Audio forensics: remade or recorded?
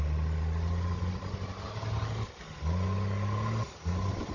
recorded